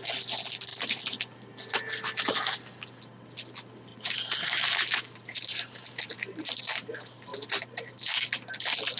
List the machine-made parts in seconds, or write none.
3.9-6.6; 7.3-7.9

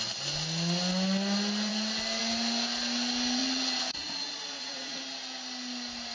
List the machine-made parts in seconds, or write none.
3.4-5.0

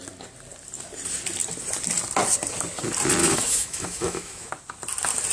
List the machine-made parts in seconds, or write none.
3.2-4.5

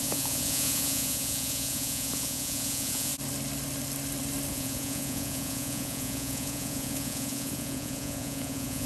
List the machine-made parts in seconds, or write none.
0.0-3.1; 4.5-8.9

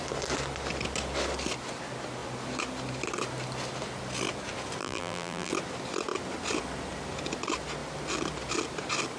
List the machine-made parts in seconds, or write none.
4.8-5.5

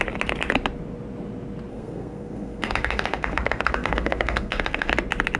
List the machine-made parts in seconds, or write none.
1.7-4.9

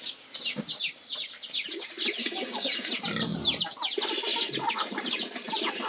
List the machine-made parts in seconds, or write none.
2.2-2.9

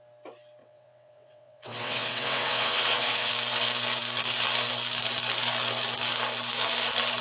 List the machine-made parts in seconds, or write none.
0.6-3.3